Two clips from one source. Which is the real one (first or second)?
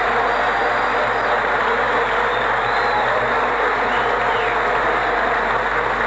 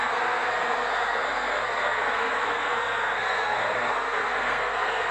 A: first